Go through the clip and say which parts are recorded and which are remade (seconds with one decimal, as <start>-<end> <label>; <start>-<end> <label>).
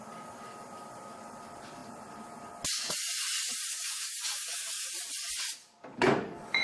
0.0-3.7 recorded; 3.7-4.9 remade; 4.9-5.6 recorded; 5.6-6.6 remade